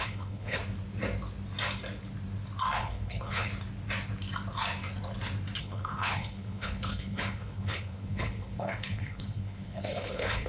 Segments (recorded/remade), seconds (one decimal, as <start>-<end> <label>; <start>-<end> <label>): 0.0-0.6 remade; 0.6-2.8 recorded; 2.8-3.5 remade; 3.5-5.6 recorded; 5.6-10.5 remade

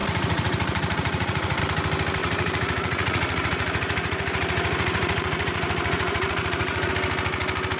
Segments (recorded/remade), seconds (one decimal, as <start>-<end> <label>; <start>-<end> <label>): 0.0-1.6 remade; 1.6-2.2 recorded; 2.2-6.9 remade; 6.9-7.8 recorded

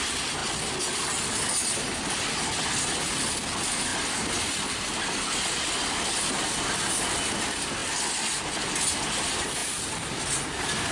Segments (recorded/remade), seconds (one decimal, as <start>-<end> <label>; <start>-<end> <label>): 0.0-10.9 recorded

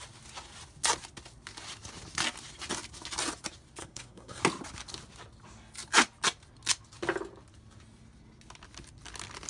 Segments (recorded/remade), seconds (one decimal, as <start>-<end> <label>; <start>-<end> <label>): 0.0-3.8 recorded; 3.8-4.4 remade; 4.4-9.5 recorded

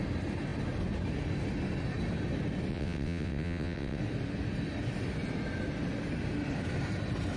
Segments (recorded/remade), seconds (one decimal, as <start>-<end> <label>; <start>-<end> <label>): 0.0-2.7 recorded; 2.7-4.0 remade; 4.0-7.4 recorded

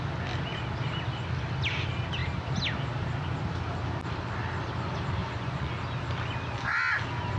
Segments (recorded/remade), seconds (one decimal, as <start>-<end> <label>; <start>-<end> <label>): 0.0-5.2 recorded; 5.2-5.7 remade; 5.7-7.4 recorded